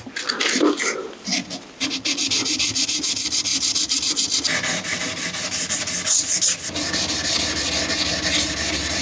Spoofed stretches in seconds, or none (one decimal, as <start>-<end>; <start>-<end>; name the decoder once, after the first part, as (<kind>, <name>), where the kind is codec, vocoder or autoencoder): 3.5-5.0 (vocoder, BigVGAN v2)